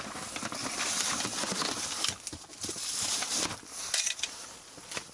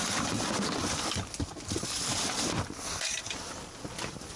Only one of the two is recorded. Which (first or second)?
first